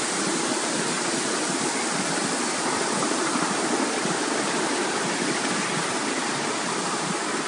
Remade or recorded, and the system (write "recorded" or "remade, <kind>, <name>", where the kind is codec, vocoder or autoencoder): recorded